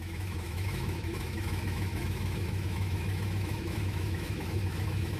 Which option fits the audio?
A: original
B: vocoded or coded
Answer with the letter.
B